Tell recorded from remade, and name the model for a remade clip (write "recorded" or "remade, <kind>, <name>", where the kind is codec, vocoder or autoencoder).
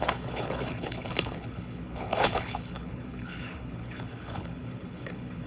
remade, codec, HILCodec